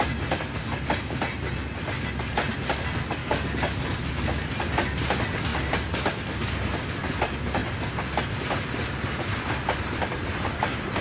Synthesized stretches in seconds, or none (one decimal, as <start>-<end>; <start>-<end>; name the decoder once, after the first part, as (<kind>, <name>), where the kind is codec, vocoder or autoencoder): 3.2-3.8 (codec, DAC)